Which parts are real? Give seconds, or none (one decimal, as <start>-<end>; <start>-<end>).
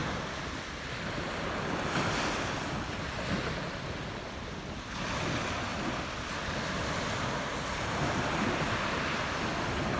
0.0-10.0